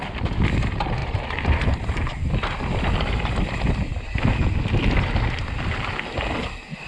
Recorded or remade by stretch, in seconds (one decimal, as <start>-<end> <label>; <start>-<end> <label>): 0.0-1.0 recorded; 1.0-2.3 remade; 2.3-6.9 recorded